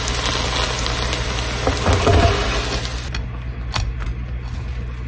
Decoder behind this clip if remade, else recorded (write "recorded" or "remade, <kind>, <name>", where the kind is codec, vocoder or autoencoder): recorded